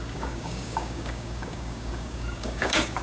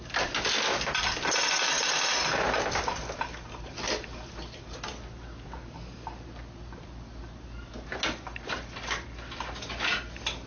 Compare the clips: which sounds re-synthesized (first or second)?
first